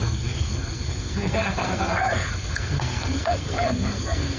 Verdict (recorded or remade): remade